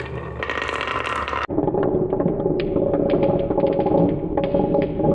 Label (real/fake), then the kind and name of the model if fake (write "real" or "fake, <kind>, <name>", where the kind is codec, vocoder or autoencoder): real